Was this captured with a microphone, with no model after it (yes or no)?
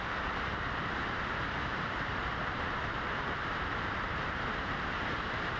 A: no